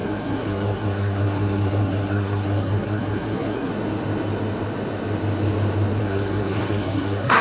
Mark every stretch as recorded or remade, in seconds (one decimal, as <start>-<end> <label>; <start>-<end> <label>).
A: 0.0-3.7 remade; 3.7-6.0 recorded; 6.0-7.4 remade